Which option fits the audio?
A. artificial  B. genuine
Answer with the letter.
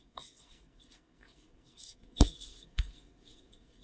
A